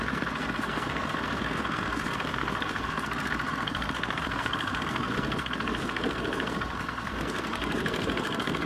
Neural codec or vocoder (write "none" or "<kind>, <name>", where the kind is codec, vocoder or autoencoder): codec, SNAC